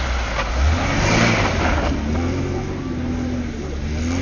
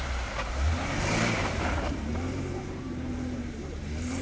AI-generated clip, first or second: second